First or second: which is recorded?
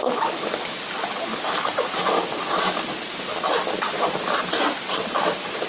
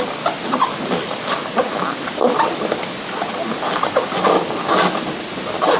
second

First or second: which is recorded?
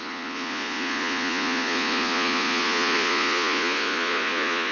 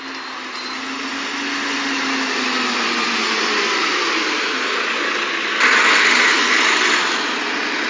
second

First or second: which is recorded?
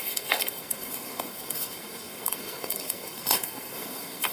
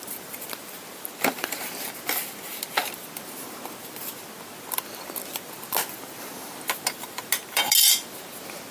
second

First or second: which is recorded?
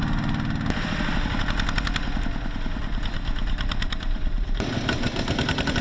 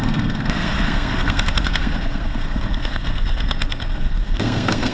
first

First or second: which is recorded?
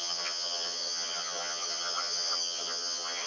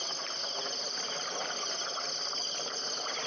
second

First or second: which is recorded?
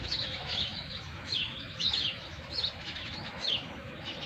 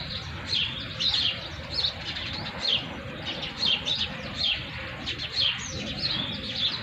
second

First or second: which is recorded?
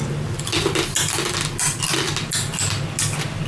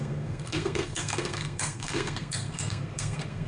first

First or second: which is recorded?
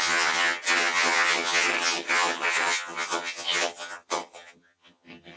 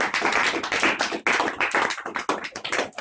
second